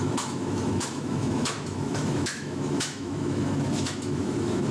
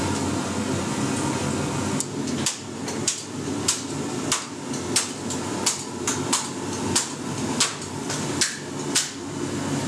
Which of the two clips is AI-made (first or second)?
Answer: first